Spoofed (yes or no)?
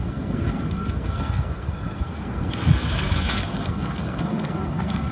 yes